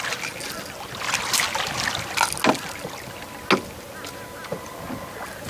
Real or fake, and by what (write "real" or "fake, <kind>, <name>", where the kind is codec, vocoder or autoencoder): real